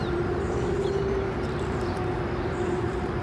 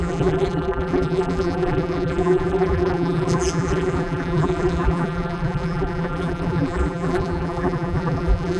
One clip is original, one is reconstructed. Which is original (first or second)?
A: first